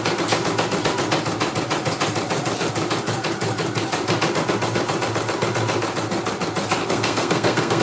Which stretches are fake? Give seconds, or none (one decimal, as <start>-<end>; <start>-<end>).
6.8-7.8